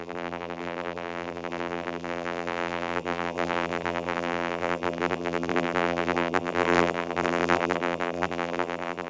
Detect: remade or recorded remade